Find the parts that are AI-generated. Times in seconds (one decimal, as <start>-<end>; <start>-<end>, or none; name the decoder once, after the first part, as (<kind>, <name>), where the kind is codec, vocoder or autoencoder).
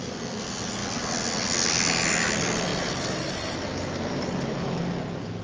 none